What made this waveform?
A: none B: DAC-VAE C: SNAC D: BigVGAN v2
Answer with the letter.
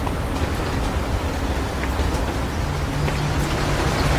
A